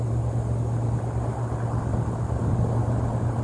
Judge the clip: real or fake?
real